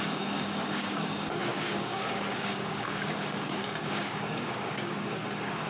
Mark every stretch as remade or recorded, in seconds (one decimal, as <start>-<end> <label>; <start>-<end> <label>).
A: 0.0-5.7 remade